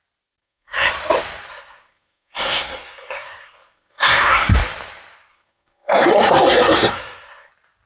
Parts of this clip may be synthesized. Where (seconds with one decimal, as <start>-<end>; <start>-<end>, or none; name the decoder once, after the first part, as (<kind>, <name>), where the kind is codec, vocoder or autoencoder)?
0.4-0.9 (codec, SNAC); 1.5-4.5; 5.3-7.5